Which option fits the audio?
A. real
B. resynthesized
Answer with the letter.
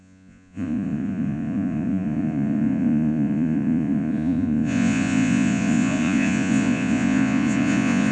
B